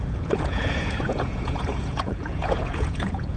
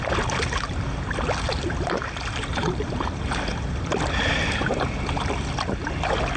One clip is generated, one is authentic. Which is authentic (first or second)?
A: second